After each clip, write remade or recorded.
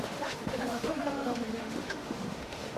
remade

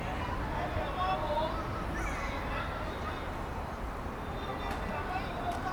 recorded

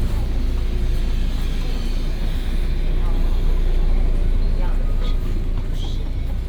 recorded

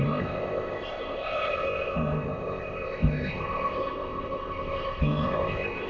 remade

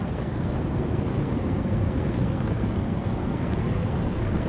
remade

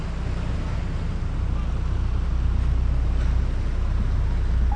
recorded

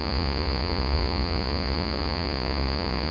remade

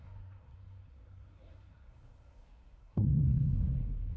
remade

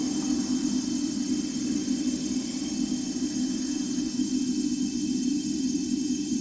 recorded